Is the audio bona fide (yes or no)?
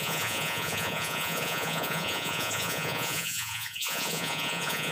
no